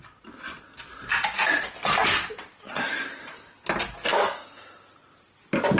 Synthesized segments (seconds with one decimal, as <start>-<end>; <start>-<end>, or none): 4.0-4.6